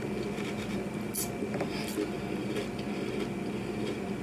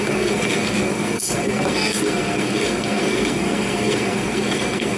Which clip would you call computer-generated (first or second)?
second